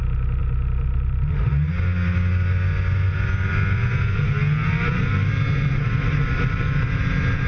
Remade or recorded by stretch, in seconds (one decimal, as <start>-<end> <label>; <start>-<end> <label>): 0.0-7.5 recorded